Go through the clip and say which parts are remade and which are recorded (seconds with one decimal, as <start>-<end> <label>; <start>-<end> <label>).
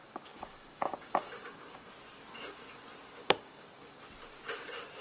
0.0-1.9 remade; 1.9-3.2 recorded; 3.2-4.0 remade; 4.0-5.0 recorded